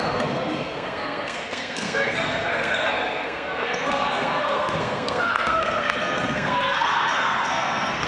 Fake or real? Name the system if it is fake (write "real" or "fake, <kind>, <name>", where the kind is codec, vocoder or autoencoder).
fake, codec, SNAC